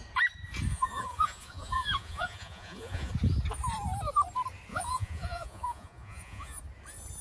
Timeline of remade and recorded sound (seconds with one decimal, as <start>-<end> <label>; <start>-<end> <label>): 0.0-0.7 recorded; 0.7-3.1 remade; 3.1-4.7 recorded; 4.7-6.6 remade; 6.6-7.2 recorded